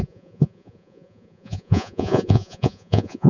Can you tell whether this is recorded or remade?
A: remade